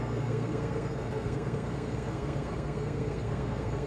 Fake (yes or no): yes